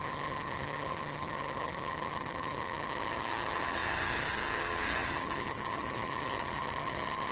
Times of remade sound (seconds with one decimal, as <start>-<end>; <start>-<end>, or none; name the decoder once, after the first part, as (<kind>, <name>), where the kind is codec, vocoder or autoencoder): 0.0-7.3 (vocoder, HiFi-GAN)